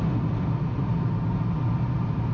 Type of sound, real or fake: real